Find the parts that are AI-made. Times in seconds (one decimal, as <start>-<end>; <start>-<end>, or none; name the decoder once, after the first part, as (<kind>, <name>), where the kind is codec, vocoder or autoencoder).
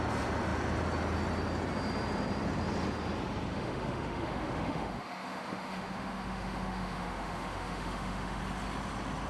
3.5-8.4 (autoencoder, DAC-VAE)